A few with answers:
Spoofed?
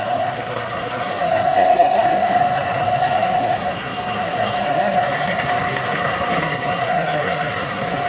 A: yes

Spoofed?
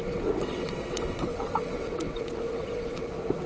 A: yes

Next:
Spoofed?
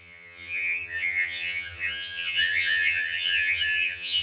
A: yes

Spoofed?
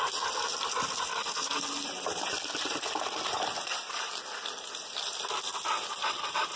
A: no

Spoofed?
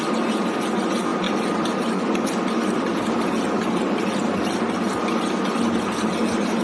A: no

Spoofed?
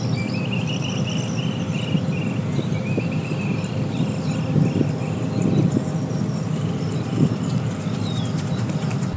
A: no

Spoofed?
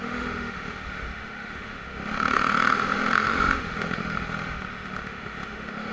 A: yes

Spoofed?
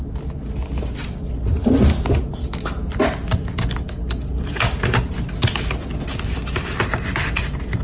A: no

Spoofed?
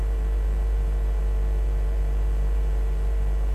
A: yes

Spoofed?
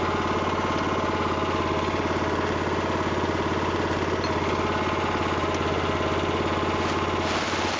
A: no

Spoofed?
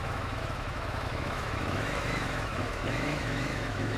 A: yes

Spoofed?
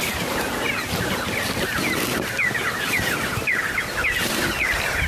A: no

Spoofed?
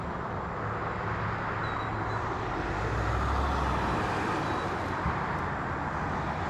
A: no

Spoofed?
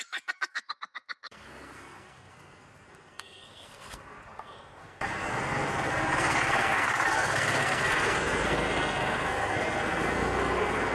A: yes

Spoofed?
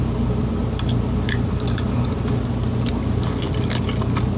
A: no